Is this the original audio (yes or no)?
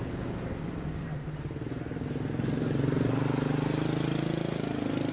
yes